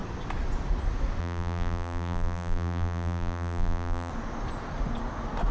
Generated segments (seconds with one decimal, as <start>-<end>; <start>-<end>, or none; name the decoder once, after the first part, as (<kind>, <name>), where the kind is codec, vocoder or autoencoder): 1.2-4.1 (vocoder, BigVGAN v2)